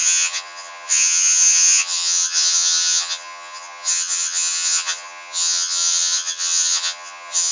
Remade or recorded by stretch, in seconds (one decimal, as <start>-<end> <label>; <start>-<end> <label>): 0.0-7.5 remade